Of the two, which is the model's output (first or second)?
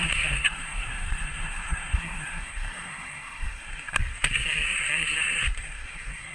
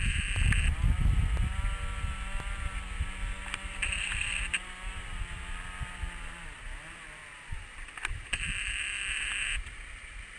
first